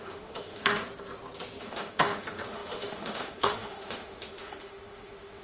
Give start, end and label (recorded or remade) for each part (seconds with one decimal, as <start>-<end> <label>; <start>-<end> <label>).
0.0-0.8 remade; 0.8-1.6 recorded; 1.6-5.4 remade